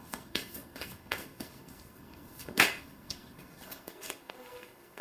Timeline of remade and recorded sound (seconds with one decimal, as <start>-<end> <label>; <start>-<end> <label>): 0.0-5.0 remade